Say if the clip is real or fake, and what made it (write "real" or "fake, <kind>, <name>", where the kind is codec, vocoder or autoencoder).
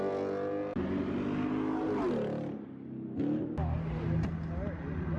real